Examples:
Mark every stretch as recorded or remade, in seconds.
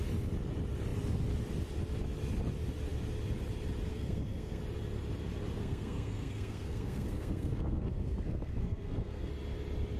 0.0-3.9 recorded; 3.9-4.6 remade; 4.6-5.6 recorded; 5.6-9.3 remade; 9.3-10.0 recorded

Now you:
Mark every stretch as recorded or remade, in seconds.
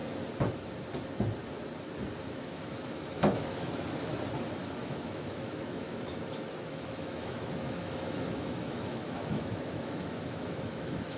0.0-2.3 recorded; 2.3-4.1 remade; 4.1-4.6 recorded; 4.6-11.2 remade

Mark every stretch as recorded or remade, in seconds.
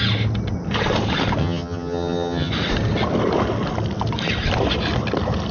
0.0-1.4 recorded; 1.4-2.5 remade; 2.5-5.5 recorded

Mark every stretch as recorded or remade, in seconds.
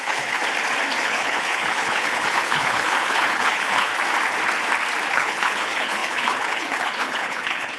0.0-0.4 remade; 0.4-1.0 recorded; 1.0-3.9 remade; 3.9-5.1 recorded; 5.1-7.8 remade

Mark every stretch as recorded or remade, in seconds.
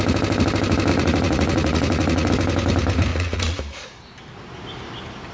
0.0-0.9 recorded; 0.9-2.3 remade; 2.3-3.1 recorded; 3.1-3.6 remade; 3.6-5.3 recorded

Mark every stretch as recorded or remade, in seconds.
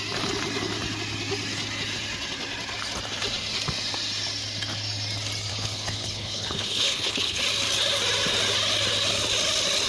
0.0-5.5 recorded; 5.5-7.4 remade; 7.4-9.9 recorded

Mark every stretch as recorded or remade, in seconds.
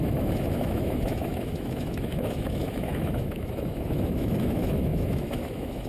0.0-5.9 remade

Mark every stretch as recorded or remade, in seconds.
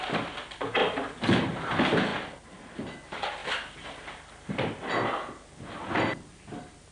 0.0-6.9 recorded